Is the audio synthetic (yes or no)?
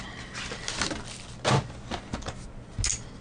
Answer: no